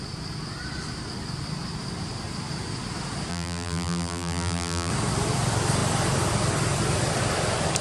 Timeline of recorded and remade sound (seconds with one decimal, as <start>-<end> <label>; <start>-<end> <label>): 0.0-3.3 recorded; 3.3-4.9 remade; 4.9-7.8 recorded